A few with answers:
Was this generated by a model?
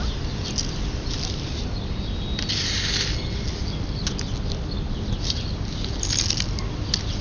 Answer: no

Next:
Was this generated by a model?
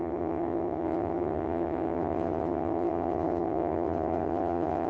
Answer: yes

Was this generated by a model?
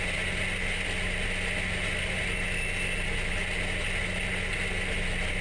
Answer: no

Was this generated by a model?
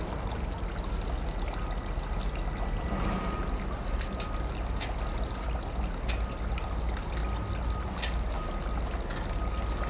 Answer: no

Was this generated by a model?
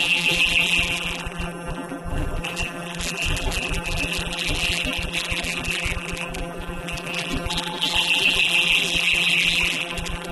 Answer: yes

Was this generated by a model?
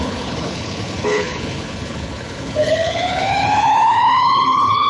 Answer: yes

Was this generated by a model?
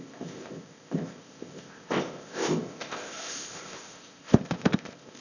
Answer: yes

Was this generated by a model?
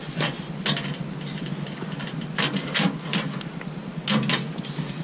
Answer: no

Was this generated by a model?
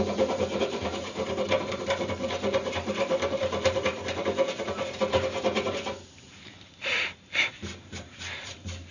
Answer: yes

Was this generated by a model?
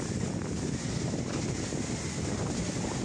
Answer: no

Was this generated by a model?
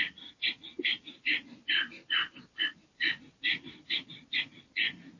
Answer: no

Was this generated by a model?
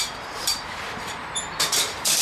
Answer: yes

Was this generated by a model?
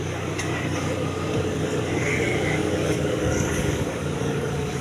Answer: yes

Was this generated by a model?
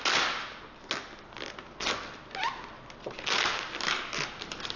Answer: no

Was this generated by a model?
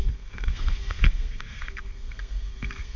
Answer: yes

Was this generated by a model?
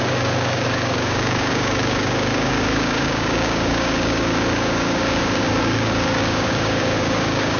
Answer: yes